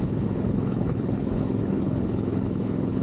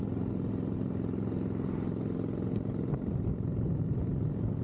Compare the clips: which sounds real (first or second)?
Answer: second